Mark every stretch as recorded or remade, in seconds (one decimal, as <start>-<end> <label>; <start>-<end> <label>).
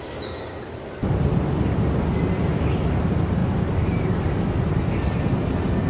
0.0-5.9 recorded